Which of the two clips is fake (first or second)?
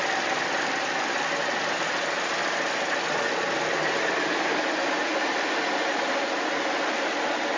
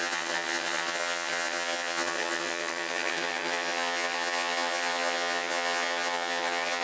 second